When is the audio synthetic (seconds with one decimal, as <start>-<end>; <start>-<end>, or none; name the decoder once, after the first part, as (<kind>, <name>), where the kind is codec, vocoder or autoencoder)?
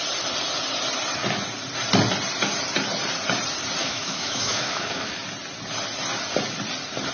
3.8-5.1 (autoencoder, DAC-VAE)